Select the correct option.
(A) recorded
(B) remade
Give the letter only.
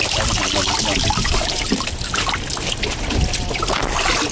A